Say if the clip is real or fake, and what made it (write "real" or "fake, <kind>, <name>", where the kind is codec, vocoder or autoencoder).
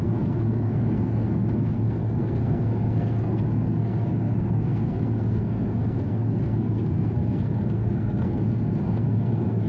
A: fake, codec, SNAC